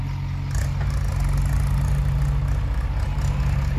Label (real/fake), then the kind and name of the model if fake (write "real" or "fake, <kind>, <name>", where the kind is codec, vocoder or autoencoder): real